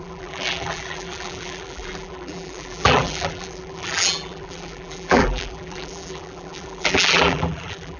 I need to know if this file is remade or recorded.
remade